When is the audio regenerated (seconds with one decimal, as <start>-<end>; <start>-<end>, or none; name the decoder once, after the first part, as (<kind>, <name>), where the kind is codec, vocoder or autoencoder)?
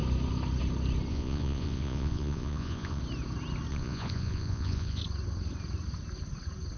1.1-3.0 (vocoder, Vocos); 3.7-5.0